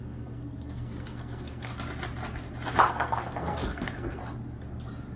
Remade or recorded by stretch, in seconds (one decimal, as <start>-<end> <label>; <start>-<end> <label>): 0.0-1.7 remade; 1.7-2.9 recorded; 2.9-4.2 remade; 4.2-5.2 recorded